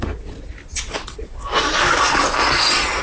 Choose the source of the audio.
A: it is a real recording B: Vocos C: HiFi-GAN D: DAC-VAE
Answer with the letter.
A